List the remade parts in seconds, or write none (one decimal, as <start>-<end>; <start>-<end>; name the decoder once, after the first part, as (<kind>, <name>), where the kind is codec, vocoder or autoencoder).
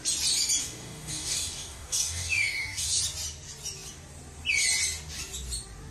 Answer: 0.6-3.0 (codec, DAC)